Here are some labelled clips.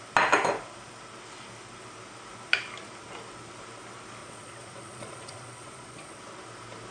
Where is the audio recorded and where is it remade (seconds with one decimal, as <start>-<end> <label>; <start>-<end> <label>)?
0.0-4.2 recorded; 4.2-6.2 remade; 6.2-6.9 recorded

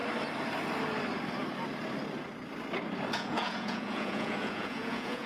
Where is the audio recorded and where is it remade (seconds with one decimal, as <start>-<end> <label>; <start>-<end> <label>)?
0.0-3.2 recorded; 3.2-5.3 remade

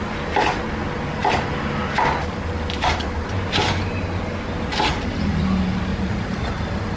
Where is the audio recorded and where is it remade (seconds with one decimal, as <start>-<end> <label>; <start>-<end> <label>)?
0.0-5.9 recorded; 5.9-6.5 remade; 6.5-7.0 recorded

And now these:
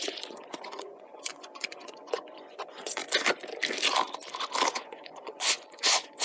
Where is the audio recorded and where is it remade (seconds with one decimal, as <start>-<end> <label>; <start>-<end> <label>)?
0.0-3.0 remade; 3.0-4.7 recorded; 4.7-6.2 remade

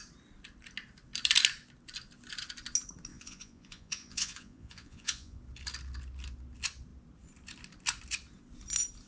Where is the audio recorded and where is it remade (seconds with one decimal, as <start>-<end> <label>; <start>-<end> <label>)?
0.0-3.1 recorded; 3.1-5.4 remade; 5.4-9.1 recorded

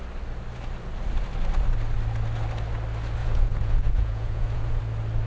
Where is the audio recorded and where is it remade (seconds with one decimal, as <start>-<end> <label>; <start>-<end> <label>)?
0.0-3.2 recorded; 3.2-4.8 remade; 4.8-5.3 recorded

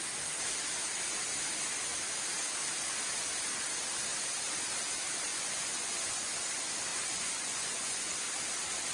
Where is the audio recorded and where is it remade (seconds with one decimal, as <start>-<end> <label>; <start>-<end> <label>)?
0.0-5.3 recorded; 5.3-6.3 remade; 6.3-6.9 recorded; 6.9-8.3 remade; 8.3-8.9 recorded

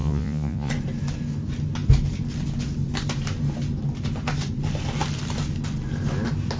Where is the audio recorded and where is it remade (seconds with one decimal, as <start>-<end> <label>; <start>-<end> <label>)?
0.0-0.7 remade; 0.7-6.6 recorded